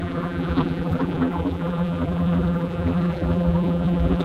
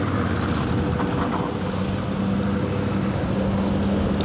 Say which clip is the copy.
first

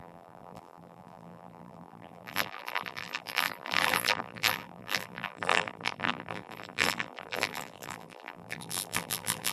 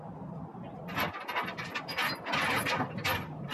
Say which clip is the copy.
first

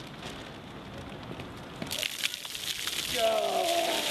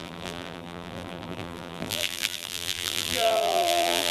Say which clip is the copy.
second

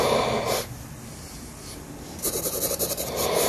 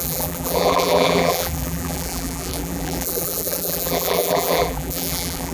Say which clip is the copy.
second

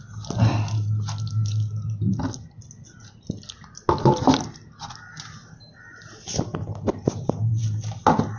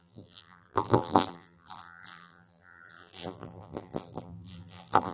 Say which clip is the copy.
second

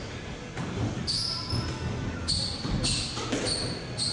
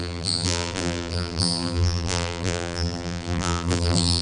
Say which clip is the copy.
second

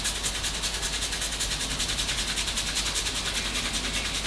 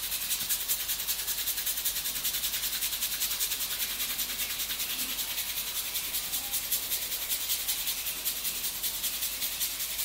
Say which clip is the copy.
second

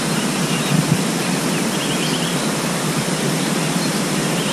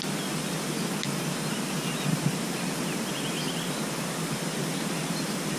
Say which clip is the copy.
first